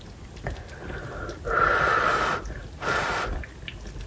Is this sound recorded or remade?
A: recorded